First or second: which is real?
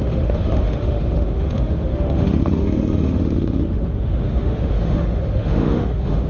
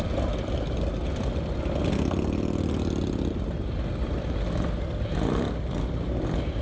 second